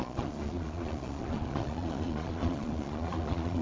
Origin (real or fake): fake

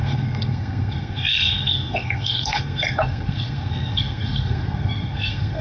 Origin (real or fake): fake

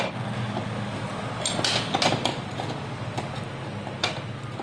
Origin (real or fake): real